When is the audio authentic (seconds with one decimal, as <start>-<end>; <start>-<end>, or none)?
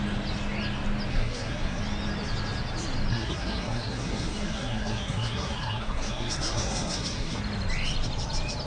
0.0-1.1; 1.8-3.1; 7.4-8.7